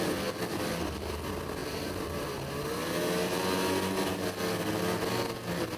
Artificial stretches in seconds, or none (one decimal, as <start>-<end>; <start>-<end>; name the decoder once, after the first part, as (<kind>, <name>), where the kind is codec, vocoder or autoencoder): none